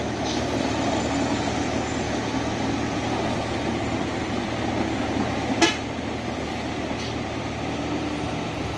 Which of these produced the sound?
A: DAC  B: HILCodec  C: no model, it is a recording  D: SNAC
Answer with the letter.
C